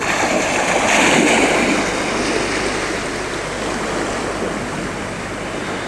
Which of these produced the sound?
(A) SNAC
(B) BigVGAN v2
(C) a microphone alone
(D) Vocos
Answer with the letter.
C